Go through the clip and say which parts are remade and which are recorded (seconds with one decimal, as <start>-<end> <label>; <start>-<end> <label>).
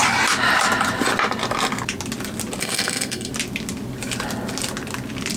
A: 0.0-2.6 recorded; 2.6-3.3 remade; 3.3-5.4 recorded